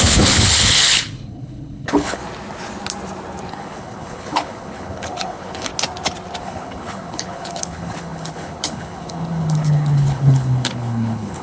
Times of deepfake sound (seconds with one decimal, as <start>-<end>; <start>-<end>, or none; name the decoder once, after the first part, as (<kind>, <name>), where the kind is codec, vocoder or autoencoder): 0.0-2.2 (codec, HILCodec); 3.5-5.7; 6.4-11.4